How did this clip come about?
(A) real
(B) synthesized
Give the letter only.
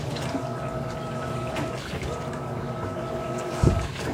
B